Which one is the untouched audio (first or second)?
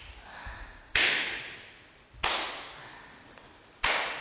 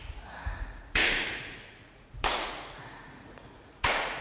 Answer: first